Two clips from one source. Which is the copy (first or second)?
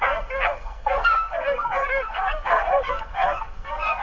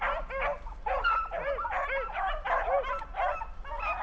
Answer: first